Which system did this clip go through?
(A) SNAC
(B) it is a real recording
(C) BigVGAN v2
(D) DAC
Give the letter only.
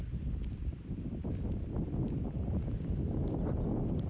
B